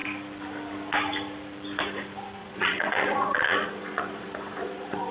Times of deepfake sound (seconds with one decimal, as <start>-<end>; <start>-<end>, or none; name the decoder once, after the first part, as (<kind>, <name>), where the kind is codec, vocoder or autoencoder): 2.4-5.1 (vocoder, Vocos)